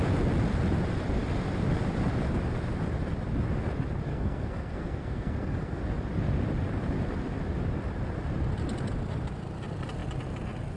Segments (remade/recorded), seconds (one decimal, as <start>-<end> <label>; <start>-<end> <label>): 0.0-4.1 recorded; 4.1-5.8 remade; 5.8-10.8 recorded